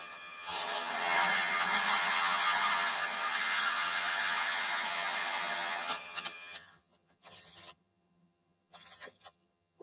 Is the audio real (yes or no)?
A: no